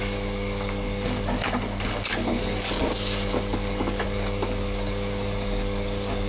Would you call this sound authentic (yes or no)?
no